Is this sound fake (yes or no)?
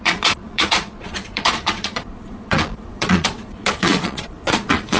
yes